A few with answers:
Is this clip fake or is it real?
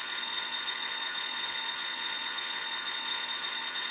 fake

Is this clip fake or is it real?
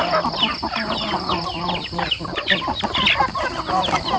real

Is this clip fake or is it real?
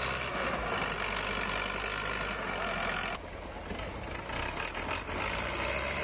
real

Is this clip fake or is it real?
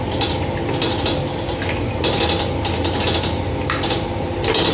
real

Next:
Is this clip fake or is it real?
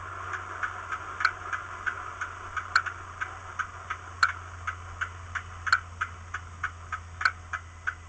real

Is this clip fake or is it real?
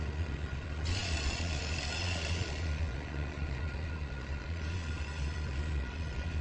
fake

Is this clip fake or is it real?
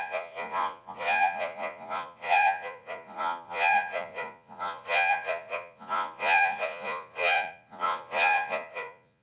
fake